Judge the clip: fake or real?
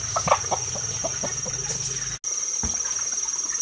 real